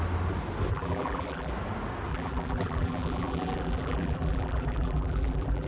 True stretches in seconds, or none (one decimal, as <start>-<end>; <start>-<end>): 0.0-0.7; 1.5-2.1